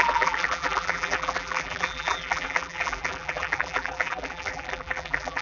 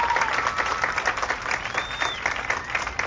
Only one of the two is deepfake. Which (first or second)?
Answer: first